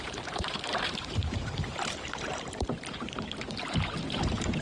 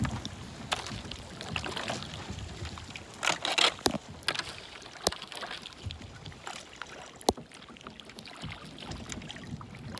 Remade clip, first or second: first